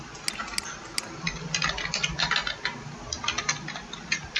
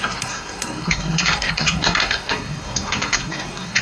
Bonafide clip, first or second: first